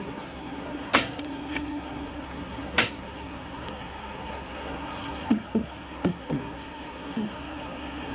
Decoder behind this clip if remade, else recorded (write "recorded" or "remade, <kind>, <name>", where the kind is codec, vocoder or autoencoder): remade, codec, SNAC